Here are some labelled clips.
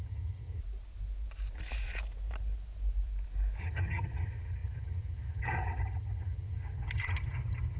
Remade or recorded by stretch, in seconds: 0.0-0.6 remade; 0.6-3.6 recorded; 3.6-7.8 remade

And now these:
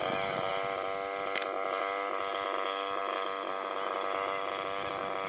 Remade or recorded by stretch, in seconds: 0.0-5.3 recorded

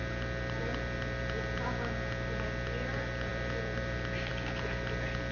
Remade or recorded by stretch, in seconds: 0.0-5.3 recorded

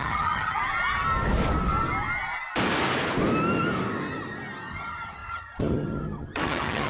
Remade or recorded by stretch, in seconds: 0.0-0.6 remade; 0.6-4.7 recorded; 4.7-6.9 remade

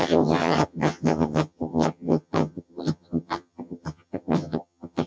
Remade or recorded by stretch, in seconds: 0.0-5.1 remade